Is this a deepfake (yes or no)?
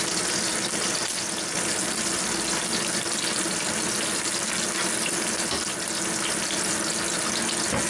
no